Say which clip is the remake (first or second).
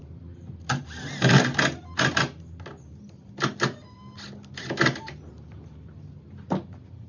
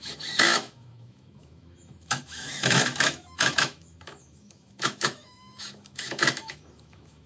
second